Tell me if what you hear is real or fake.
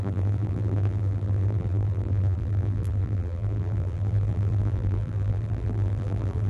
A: fake